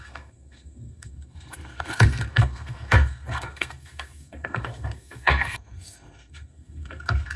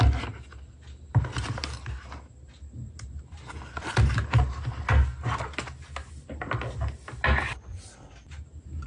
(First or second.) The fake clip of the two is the first